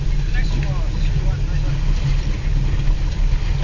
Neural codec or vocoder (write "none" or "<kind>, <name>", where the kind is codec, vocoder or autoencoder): none